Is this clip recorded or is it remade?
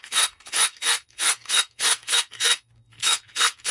remade